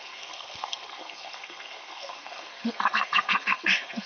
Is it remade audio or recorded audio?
remade